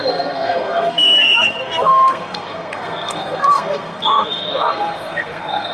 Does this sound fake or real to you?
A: fake